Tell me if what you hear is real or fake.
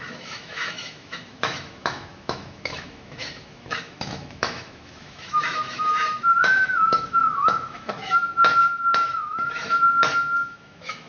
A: fake